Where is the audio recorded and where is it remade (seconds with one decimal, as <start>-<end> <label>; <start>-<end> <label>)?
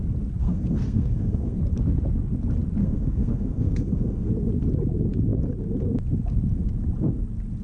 0.0-0.4 recorded; 0.4-1.6 remade; 1.6-2.8 recorded; 2.8-4.3 remade; 4.3-7.6 recorded